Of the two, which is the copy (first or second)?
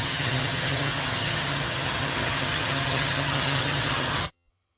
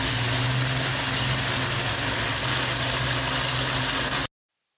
first